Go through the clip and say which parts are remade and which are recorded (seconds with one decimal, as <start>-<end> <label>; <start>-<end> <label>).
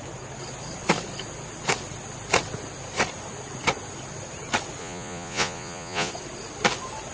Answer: 0.0-4.8 recorded; 4.8-6.1 remade; 6.1-7.1 recorded